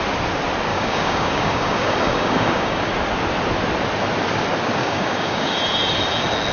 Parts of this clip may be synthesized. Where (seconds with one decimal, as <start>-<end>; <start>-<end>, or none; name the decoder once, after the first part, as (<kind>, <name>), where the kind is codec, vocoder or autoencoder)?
0.7-2.9 (codec, DAC); 4.8-5.5